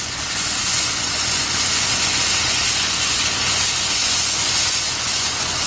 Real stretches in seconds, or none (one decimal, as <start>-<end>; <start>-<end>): none